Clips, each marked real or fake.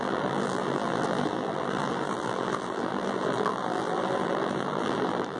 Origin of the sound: fake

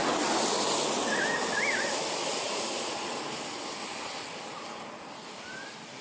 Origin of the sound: real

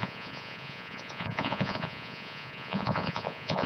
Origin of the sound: fake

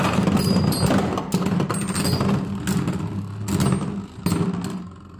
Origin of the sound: real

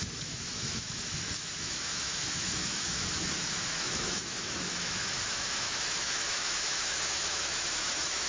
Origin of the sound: fake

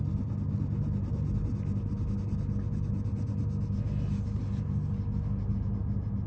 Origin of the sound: real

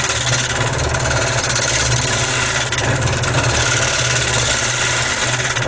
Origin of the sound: real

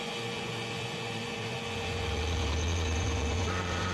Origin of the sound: fake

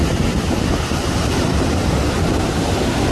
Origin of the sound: real